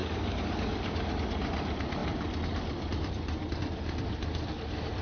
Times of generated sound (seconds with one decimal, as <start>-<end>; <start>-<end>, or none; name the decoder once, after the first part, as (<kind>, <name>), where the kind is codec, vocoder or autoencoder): 0.0-1.1 (codec, DAC)